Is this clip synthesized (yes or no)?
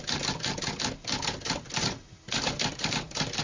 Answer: no